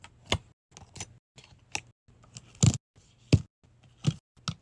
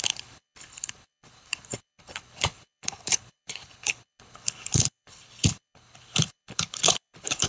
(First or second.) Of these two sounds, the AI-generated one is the second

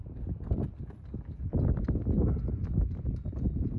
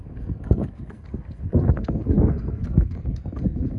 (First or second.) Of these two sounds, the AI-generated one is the second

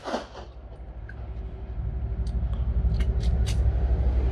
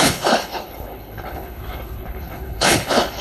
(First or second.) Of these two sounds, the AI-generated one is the second